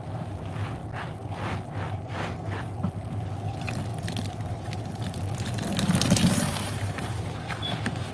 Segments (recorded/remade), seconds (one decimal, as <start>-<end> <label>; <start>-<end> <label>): 0.0-3.9 recorded; 3.9-8.1 remade